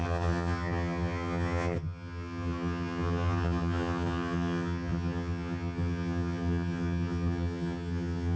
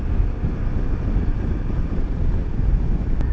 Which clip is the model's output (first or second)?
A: first